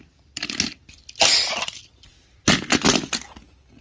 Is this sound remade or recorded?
recorded